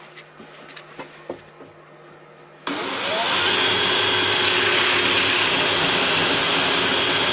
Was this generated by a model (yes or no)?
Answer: no